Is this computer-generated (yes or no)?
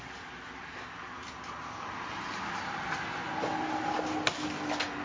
no